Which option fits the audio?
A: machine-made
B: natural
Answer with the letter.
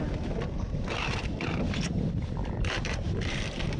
B